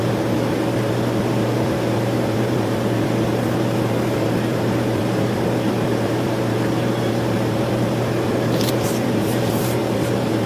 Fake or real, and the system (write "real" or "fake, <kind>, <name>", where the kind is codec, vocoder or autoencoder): fake, vocoder, BigVGAN v2